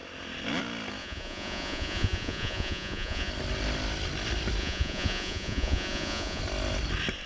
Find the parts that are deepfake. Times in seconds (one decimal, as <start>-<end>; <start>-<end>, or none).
1.0-3.3; 4.6-6.4

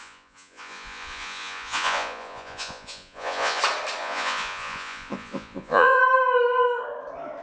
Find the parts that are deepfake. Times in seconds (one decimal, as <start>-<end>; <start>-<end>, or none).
0.0-3.6; 4.0-6.0